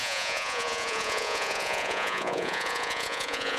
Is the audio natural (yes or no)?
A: no